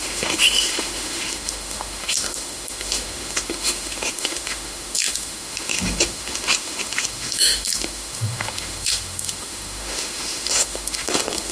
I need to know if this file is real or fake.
fake